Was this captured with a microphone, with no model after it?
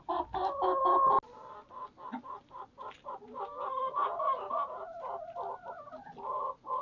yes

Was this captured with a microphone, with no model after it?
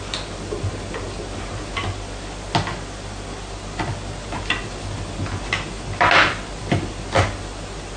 yes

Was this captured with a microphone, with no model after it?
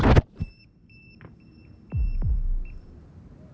yes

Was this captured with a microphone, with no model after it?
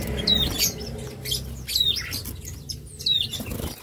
yes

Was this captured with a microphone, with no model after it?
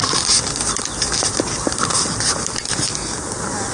yes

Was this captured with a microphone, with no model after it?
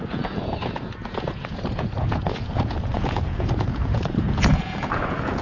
no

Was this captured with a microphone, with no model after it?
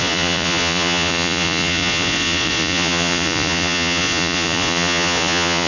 no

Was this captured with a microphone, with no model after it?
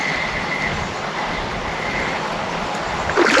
yes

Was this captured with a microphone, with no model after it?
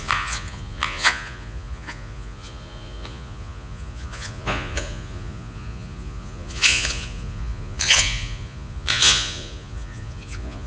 no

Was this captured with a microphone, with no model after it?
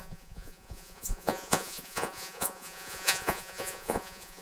no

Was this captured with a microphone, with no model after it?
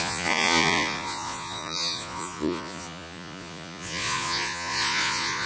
no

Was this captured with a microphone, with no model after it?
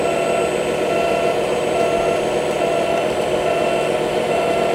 yes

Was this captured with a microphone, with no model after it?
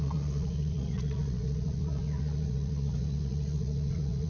no